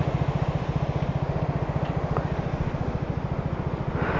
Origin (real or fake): real